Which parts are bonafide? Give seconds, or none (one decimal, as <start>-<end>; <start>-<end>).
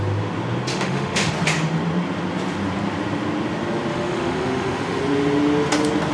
0.0-0.7; 1.3-3.9; 5.0-6.1